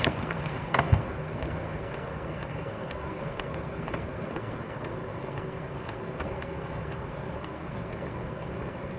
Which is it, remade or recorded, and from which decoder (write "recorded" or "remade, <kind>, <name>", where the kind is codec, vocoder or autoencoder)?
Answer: remade, codec, SNAC